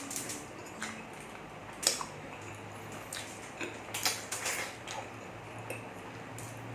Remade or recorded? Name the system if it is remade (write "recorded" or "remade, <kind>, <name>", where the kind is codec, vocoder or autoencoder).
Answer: recorded